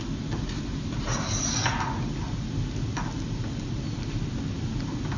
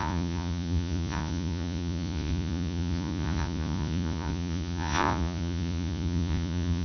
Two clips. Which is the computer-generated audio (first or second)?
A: second